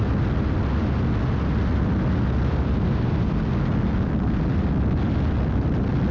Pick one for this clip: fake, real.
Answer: real